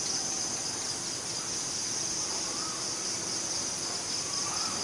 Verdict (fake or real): real